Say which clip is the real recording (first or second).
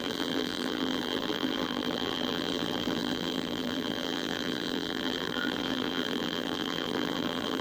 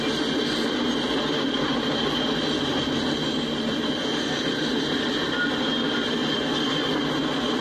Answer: second